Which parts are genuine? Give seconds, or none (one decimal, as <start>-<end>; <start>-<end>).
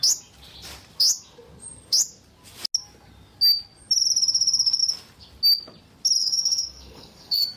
0.0-6.2